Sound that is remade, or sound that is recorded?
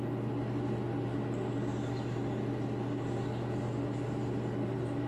recorded